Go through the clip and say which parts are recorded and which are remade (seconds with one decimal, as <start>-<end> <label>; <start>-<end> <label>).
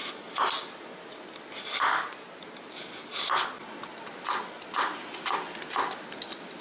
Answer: 0.0-6.6 recorded